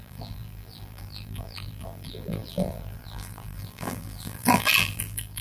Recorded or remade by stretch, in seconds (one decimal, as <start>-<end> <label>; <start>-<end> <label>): 0.0-5.4 remade